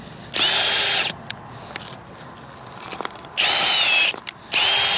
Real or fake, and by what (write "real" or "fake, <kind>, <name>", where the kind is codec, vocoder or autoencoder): real